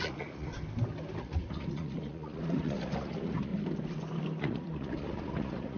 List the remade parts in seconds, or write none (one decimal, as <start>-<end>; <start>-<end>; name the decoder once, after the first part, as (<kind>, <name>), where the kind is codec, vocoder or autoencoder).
0.0-0.5 (vocoder, Vocos); 1.2-3.5; 4.4-5.8

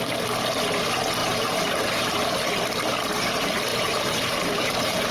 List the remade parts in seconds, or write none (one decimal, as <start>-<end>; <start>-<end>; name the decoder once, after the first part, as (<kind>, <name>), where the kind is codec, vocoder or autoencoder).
1.2-2.2 (vocoder, BigVGAN v2); 3.7-5.1

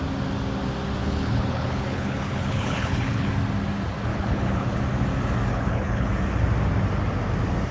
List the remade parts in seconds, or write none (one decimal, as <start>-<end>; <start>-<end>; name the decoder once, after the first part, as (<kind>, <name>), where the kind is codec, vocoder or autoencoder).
1.0-3.3 (codec, HILCodec); 4.1-4.8; 5.5-6.1